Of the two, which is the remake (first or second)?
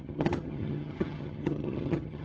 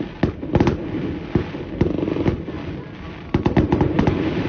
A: first